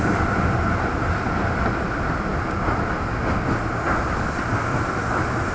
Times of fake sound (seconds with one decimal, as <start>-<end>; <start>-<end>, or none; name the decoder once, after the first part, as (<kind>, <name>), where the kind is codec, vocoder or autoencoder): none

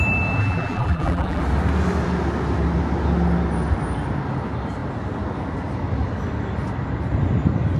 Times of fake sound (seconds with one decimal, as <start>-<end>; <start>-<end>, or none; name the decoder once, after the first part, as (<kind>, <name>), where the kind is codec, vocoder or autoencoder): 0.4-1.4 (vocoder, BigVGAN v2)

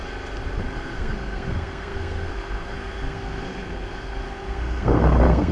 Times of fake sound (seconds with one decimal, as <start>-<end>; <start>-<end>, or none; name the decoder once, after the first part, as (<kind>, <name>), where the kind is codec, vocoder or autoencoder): 0.6-5.5 (codec, SNAC)